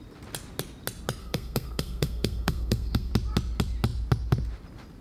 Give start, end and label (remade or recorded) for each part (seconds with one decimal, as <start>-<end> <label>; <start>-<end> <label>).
0.0-1.2 recorded; 1.2-3.1 remade; 3.1-5.0 recorded